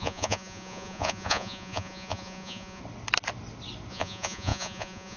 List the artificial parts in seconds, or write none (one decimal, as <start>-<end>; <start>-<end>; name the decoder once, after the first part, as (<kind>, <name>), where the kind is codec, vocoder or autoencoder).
0.0-2.8 (vocoder, Vocos); 3.9-5.2